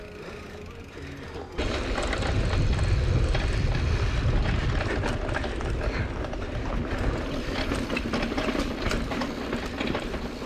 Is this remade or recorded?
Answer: recorded